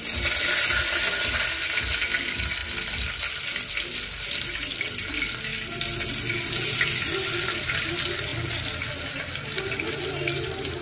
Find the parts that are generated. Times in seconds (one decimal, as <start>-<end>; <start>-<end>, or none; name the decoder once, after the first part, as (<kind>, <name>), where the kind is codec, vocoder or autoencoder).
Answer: none